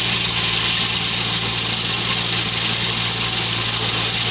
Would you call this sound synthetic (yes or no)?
no